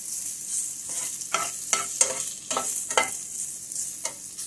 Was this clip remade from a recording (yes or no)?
no